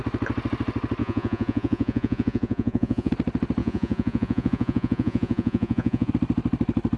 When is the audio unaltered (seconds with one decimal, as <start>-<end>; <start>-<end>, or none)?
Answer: 0.0-1.0; 3.1-3.6; 6.1-7.0